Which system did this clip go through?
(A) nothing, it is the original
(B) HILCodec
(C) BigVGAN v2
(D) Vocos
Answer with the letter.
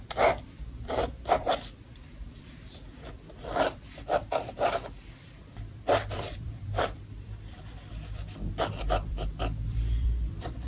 C